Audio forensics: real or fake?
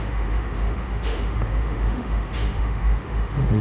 fake